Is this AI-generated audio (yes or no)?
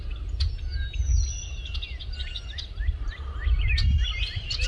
no